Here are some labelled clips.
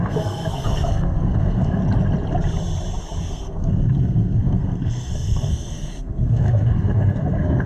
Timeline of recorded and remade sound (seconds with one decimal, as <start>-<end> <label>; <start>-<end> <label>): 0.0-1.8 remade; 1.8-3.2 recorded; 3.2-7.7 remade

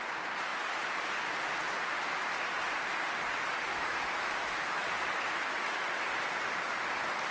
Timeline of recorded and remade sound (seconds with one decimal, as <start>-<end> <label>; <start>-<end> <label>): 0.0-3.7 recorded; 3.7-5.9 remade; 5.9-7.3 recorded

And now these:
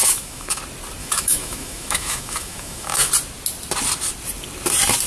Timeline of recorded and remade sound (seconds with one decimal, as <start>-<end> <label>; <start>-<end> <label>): 0.0-0.6 remade; 0.6-1.0 recorded; 1.0-3.1 remade; 3.1-5.1 recorded

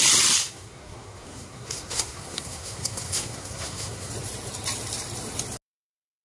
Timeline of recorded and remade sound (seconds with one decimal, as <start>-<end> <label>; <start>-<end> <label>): 0.0-0.4 recorded; 0.4-4.1 remade; 4.1-6.2 recorded